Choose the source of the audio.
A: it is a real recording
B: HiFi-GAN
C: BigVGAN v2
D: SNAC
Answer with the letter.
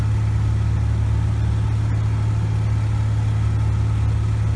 A